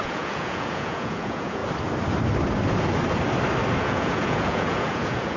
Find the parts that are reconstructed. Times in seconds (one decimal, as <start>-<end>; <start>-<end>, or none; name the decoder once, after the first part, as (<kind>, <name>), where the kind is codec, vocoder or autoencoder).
0.0-1.6 (vocoder, Vocos); 3.8-5.4